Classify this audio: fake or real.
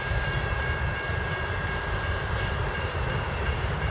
fake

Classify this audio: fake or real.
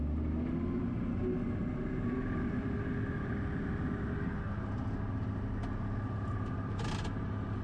real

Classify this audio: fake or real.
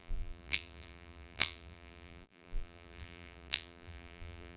fake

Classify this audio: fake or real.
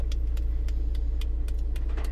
real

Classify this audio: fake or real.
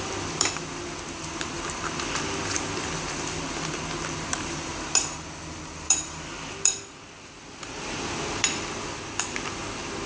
fake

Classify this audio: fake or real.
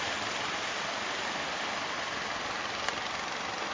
real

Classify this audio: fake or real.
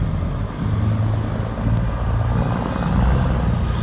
real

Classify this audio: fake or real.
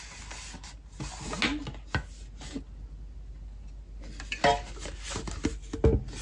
real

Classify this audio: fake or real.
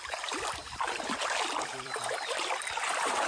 fake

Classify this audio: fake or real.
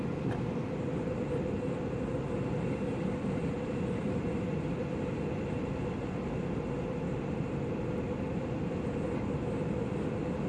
real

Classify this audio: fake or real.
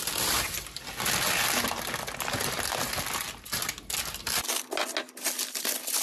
real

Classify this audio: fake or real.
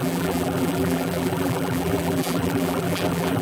fake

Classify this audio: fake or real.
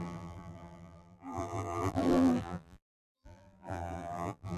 fake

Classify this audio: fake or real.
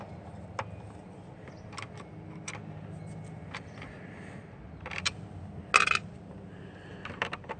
real